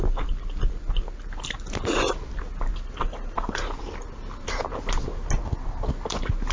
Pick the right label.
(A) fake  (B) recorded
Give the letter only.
B